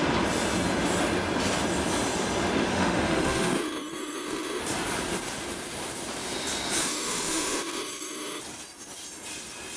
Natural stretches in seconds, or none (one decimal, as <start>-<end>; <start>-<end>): 0.0-2.7; 4.6-6.8; 8.4-9.8